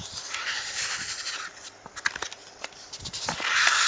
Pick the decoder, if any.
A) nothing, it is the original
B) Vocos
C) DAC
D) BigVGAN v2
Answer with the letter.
A